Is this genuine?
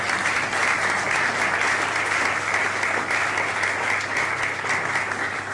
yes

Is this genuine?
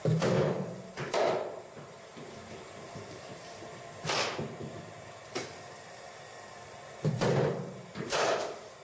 no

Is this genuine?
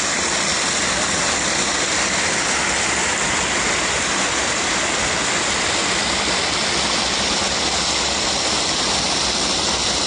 yes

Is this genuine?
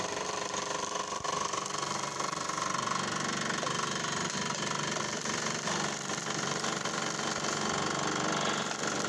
no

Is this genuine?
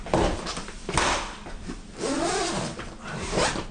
yes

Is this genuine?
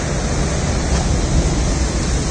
yes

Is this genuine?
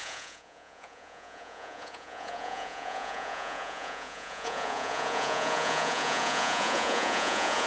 no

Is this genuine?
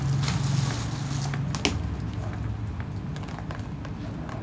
yes